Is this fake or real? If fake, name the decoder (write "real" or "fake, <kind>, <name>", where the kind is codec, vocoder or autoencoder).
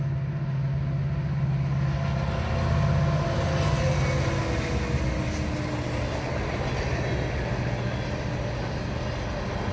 real